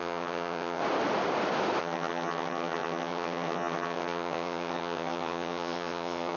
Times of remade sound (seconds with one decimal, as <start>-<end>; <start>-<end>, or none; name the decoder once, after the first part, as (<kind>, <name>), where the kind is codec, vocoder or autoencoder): 0.0-0.8 (vocoder, HiFi-GAN); 1.8-6.4